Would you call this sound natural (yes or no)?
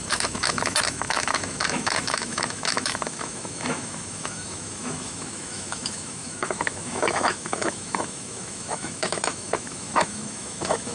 no